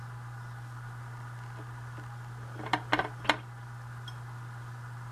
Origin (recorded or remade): recorded